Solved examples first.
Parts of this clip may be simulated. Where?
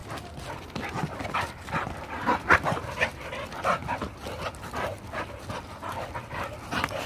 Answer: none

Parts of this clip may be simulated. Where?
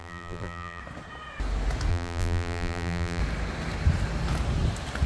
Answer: 0.0-0.8 (vocoder, BigVGAN v2); 1.9-3.2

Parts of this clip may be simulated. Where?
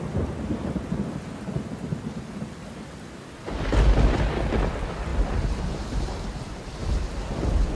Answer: none